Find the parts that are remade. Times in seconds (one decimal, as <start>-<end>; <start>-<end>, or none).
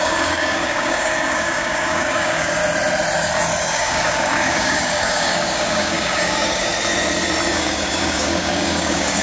0.0-2.6; 3.6-6.7; 7.5-9.2